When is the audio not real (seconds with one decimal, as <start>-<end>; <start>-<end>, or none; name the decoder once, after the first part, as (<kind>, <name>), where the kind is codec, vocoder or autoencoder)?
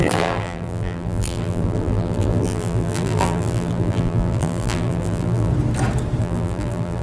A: 0.0-5.5 (vocoder, BigVGAN v2); 6.2-7.0